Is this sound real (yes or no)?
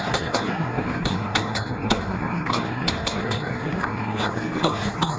no